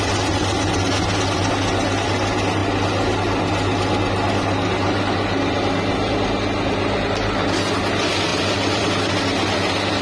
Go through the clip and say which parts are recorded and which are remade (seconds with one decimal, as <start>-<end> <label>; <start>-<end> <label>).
0.0-8.3 recorded; 8.3-8.9 remade; 8.9-10.0 recorded